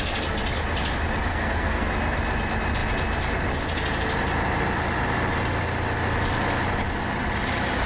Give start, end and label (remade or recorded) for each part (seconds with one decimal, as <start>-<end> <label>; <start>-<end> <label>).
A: 0.0-1.3 recorded; 1.3-1.9 remade; 1.9-7.9 recorded